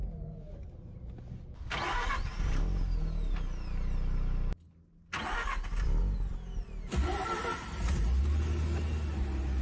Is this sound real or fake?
real